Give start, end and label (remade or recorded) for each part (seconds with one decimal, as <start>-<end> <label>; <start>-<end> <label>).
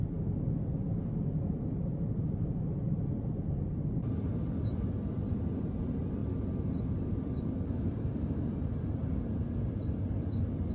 0.0-6.2 recorded; 6.2-7.4 remade; 7.4-10.7 recorded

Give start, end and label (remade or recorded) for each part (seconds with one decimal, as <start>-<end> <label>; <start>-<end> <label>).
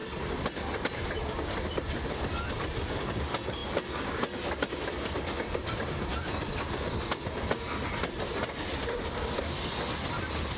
0.0-5.6 recorded; 5.6-6.5 remade; 6.5-10.6 recorded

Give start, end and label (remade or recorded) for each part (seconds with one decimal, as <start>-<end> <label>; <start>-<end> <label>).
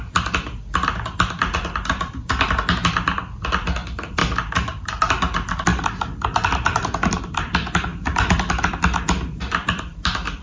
0.0-4.2 recorded; 4.2-5.0 remade; 5.0-5.7 recorded; 5.7-7.2 remade; 7.2-10.4 recorded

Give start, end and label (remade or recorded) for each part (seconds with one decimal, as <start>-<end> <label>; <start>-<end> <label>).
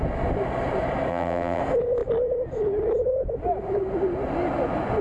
0.0-1.1 recorded; 1.1-1.6 remade; 1.6-5.0 recorded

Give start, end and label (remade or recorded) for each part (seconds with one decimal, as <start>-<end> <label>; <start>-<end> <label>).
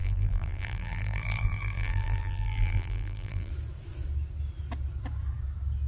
0.0-3.5 remade; 3.5-5.9 recorded